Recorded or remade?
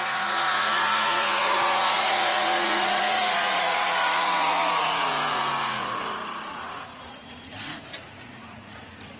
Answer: remade